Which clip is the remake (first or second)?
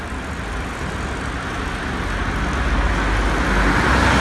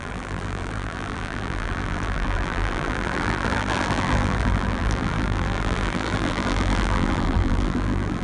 second